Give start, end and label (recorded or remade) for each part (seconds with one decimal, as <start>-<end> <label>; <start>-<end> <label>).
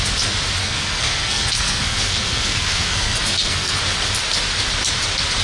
0.0-0.6 recorded; 0.6-3.8 remade; 3.8-5.4 recorded